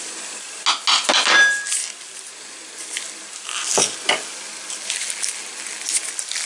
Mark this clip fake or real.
real